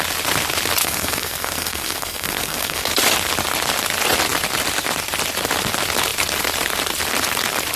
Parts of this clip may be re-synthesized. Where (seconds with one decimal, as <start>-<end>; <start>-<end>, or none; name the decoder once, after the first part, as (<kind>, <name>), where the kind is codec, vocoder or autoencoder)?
0.8-2.9 (codec, SNAC)